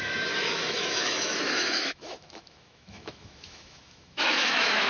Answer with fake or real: fake